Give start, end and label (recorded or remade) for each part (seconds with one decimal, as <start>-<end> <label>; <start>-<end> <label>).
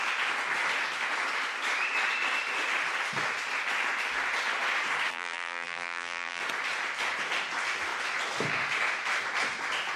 0.0-5.1 recorded; 5.1-6.4 remade; 6.4-10.0 recorded